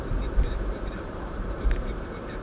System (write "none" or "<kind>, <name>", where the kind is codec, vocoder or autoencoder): vocoder, BigVGAN v2